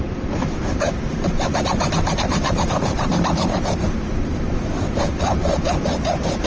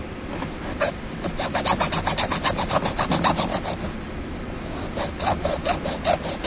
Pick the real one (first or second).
second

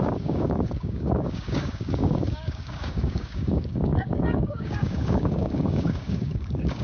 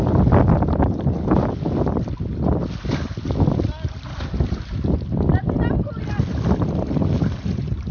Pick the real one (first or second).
second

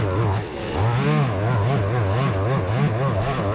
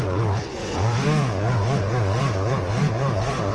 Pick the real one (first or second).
first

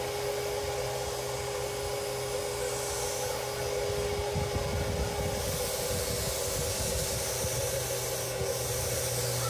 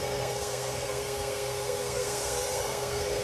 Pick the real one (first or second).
first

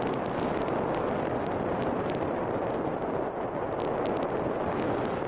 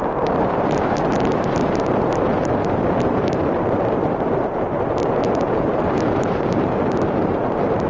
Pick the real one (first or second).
first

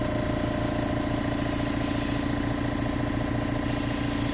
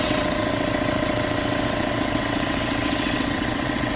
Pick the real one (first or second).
first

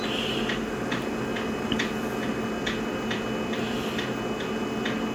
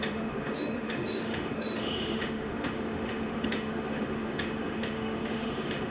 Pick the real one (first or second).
first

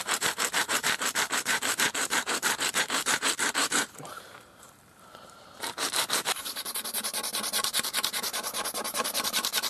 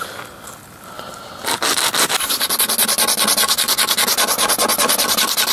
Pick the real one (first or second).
second